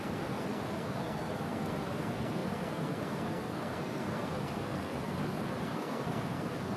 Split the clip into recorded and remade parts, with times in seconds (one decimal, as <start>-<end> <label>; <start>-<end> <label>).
0.0-6.8 remade